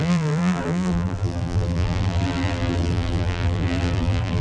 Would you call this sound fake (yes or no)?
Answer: yes